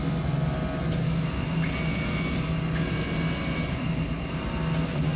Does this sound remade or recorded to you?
recorded